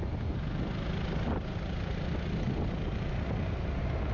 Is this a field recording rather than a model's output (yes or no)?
yes